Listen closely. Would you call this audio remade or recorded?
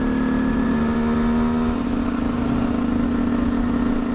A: recorded